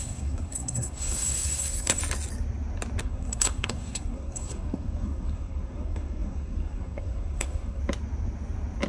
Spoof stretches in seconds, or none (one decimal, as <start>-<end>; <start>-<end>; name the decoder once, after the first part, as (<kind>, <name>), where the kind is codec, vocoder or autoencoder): 0.0-2.0 (codec, SNAC); 3.0-7.8